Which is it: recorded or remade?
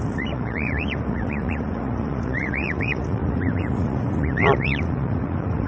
remade